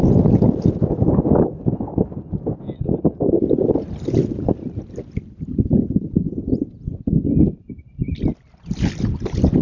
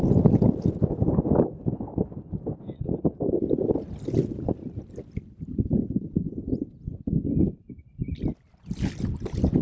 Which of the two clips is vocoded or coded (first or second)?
second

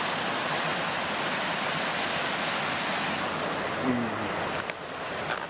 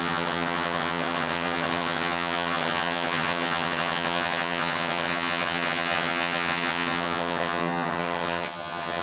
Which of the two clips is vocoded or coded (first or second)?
second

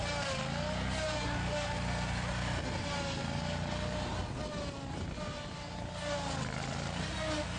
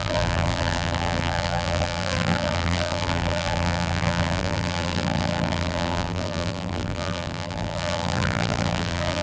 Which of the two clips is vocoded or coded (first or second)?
second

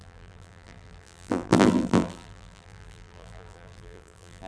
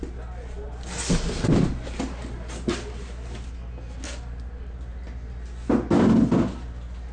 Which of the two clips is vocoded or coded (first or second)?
first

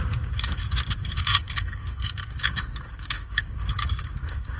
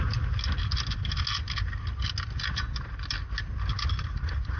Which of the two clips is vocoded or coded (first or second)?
first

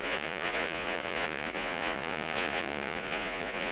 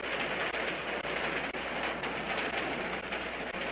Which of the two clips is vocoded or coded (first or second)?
first